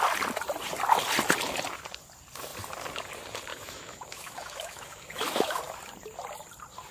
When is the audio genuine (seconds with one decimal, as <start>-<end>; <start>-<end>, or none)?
0.0-3.5; 5.6-6.9

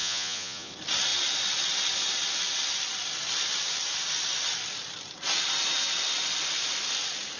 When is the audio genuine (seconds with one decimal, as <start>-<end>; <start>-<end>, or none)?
0.7-7.4

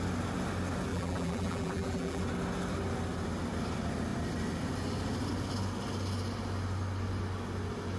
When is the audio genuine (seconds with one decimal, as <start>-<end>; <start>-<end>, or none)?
0.0-0.9; 2.2-8.0

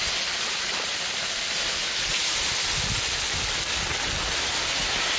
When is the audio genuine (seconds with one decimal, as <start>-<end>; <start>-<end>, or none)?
0.0-5.2

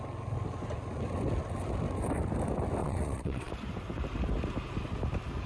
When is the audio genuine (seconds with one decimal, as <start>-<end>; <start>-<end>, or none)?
0.0-2.8; 3.5-5.5